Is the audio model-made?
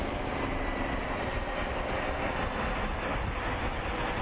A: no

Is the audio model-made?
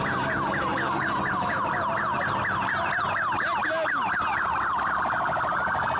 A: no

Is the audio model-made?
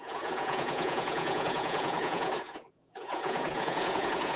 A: yes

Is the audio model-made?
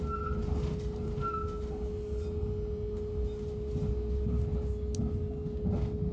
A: no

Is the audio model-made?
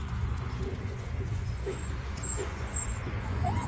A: yes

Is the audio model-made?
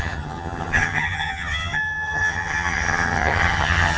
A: yes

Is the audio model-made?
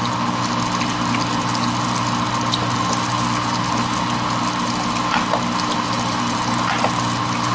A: no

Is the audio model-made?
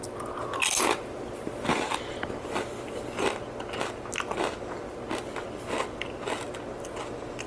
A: no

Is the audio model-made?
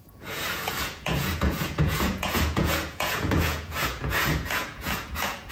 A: yes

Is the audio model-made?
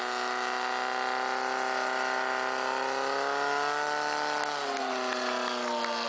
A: no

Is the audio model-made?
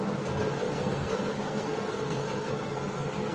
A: yes